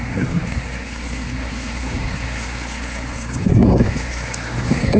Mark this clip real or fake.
fake